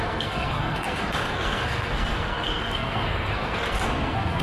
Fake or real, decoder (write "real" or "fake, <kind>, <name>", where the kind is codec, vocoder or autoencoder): fake, codec, SNAC